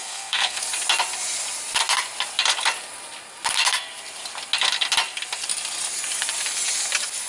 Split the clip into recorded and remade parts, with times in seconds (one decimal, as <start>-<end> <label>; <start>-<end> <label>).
0.0-0.6 remade; 0.6-7.3 recorded